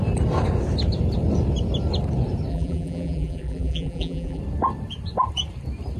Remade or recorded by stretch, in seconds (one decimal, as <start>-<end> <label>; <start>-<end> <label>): 0.0-2.5 recorded; 2.5-4.4 remade; 4.4-6.0 recorded